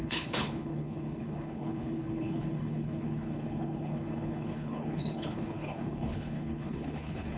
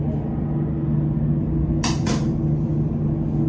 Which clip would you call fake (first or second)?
first